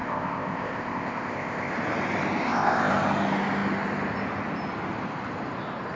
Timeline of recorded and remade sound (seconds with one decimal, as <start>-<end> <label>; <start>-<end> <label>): 0.0-1.7 remade; 1.7-2.4 recorded; 2.4-2.9 remade; 2.9-6.0 recorded